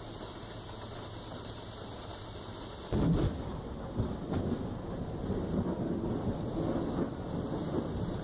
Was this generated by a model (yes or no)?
no